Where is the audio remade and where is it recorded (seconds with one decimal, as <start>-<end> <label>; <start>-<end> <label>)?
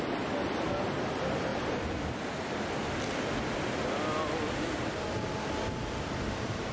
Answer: 0.0-6.7 recorded